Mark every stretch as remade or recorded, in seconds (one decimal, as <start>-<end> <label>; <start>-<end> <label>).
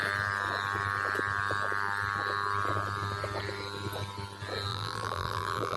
0.0-4.7 recorded; 4.7-5.8 remade